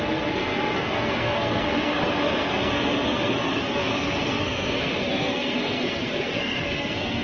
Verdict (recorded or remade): remade